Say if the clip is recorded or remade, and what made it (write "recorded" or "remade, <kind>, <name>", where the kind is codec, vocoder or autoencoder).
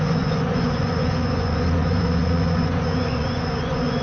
remade, vocoder, Vocos